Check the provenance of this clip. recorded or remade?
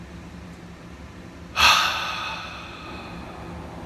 recorded